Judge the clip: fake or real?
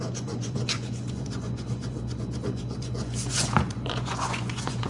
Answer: fake